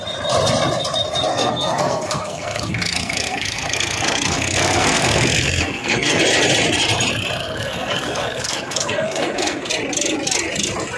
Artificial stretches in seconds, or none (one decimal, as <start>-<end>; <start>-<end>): 1.3-6.2; 7.4-9.7